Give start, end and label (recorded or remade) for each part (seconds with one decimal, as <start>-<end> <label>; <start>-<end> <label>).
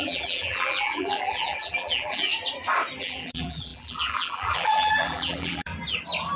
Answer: 0.0-2.3 remade; 2.3-3.0 recorded; 3.0-5.7 remade; 5.7-6.4 recorded